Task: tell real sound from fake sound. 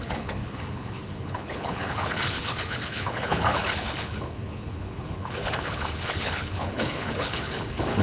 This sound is fake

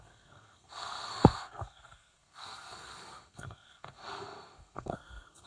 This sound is fake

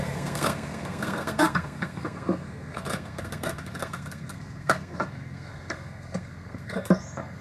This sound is fake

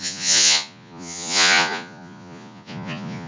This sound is fake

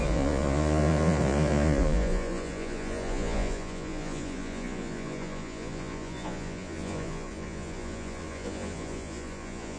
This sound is fake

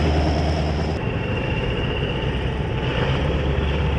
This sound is fake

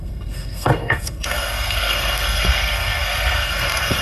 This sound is fake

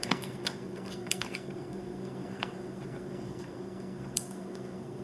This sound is fake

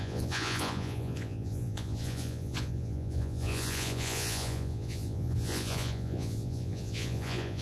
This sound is fake